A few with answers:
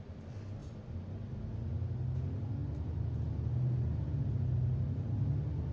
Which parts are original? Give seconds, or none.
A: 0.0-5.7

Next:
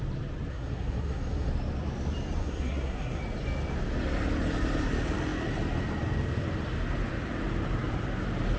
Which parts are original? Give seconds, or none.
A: 0.0-0.5; 1.5-2.4; 3.2-8.6